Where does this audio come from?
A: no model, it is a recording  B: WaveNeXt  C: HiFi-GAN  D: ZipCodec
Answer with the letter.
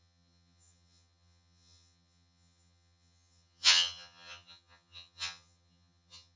C